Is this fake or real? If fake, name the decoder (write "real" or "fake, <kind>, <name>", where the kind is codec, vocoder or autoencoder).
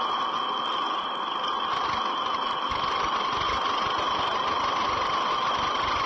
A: real